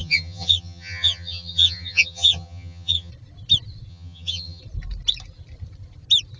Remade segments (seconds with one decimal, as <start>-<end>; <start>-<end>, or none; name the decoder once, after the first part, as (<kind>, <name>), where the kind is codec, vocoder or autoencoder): 0.0-3.1 (vocoder, HiFi-GAN); 3.9-4.6